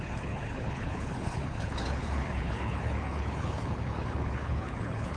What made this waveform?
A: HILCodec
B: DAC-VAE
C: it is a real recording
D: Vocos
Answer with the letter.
A